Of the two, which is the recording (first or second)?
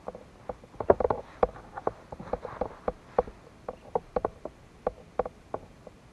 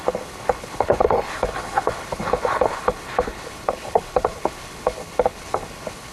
first